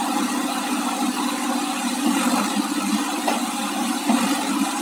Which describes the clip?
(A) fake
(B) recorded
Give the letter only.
B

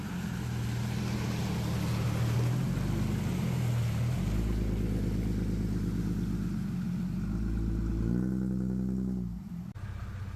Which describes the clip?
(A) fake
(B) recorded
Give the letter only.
B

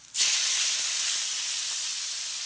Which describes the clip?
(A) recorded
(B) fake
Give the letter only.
B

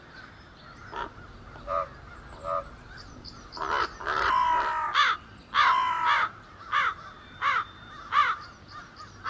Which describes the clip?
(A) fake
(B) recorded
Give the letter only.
B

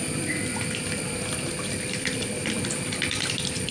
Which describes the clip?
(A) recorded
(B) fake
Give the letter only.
B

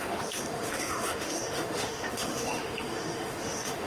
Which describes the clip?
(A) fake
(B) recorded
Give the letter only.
A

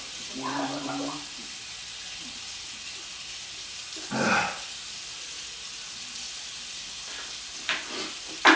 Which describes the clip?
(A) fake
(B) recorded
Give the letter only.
B